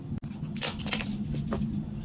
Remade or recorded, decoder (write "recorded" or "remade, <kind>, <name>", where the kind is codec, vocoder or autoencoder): recorded